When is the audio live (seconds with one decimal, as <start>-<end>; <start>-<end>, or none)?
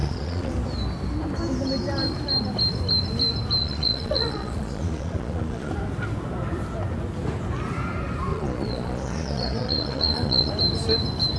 0.5-3.6; 5.7-8.3; 10.5-11.4